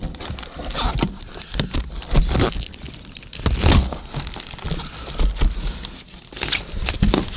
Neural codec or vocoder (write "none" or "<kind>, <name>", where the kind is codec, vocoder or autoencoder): none